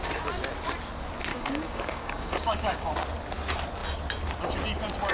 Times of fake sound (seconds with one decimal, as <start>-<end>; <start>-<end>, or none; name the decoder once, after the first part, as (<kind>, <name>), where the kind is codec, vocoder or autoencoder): 1.3-2.9 (codec, DAC)